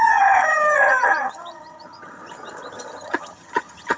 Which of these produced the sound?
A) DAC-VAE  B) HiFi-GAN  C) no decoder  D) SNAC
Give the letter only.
B